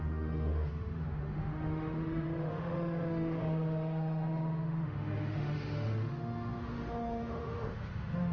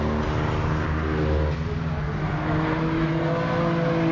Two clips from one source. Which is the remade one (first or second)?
first